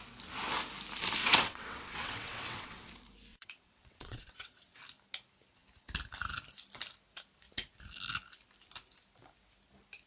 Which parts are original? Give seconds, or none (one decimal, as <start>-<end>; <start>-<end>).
0.0-1.2; 2.9-3.3; 4.8-10.1